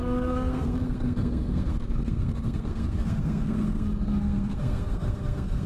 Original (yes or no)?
no